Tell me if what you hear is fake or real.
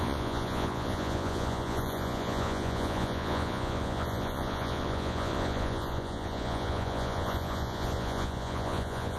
fake